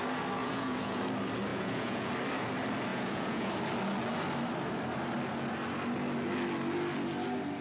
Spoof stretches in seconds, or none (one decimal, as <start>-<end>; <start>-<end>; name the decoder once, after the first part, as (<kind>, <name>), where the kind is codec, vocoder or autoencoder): 0.4-1.0 (vocoder, Vocos); 1.5-2.1; 2.9-3.5